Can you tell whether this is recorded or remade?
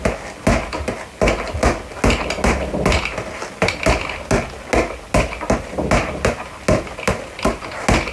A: recorded